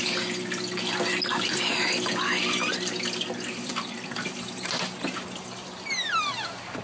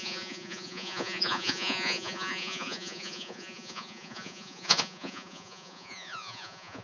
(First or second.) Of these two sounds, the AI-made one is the second